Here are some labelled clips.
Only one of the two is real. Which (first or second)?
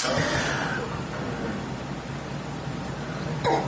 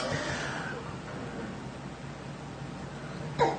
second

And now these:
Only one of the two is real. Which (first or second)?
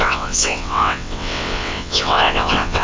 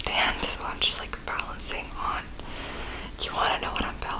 second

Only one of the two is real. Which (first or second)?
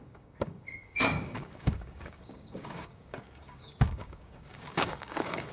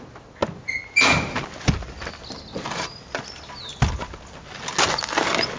second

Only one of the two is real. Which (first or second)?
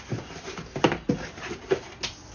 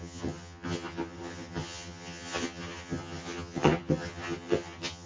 first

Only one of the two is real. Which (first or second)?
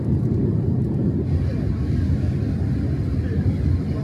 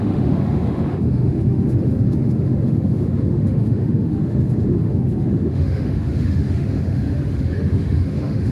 first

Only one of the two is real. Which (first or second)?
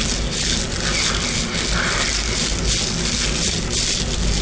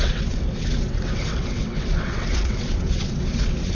first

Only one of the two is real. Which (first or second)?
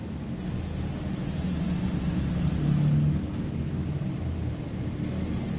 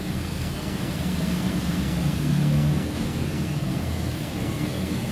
first